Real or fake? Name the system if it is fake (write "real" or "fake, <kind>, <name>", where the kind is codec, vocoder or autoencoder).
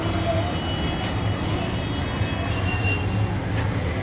real